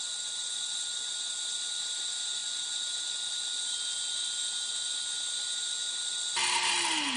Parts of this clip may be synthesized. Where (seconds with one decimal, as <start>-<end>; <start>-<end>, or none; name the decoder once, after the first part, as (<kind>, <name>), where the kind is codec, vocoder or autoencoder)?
none